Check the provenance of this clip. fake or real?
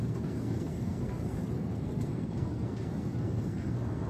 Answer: fake